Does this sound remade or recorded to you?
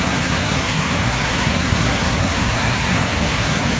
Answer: remade